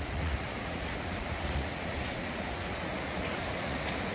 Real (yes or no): no